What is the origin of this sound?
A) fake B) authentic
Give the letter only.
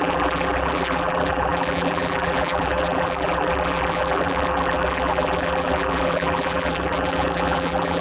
A